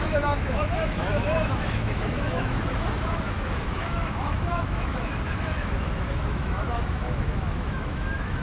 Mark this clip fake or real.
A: fake